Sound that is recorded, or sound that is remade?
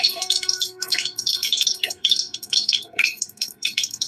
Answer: remade